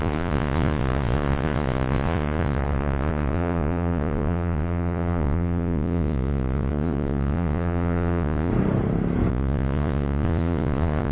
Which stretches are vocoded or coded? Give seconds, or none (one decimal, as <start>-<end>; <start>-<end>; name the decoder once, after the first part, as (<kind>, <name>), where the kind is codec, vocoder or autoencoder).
0.0-8.5 (vocoder, Vocos); 9.3-11.1